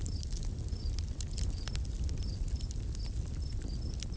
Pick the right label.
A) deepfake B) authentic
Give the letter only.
B